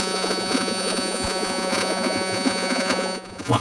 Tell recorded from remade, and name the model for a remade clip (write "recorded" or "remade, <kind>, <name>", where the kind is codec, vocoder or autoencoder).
remade, vocoder, Vocos